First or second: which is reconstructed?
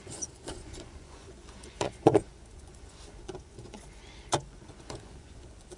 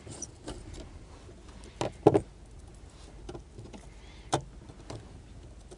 first